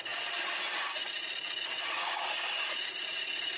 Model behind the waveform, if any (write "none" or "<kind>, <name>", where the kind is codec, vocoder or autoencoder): none